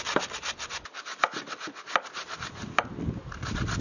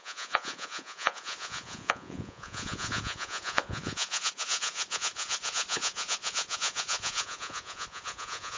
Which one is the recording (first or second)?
first